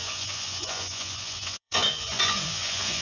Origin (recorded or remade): remade